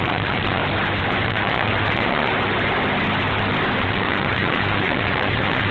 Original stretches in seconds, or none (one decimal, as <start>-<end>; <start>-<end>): 0.6-1.1; 2.3-3.8